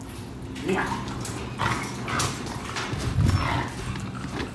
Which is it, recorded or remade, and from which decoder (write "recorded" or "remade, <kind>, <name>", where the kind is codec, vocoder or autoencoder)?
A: recorded